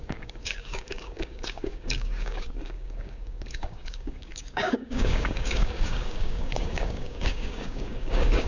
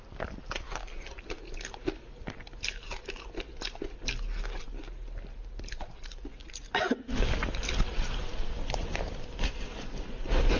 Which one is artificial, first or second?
first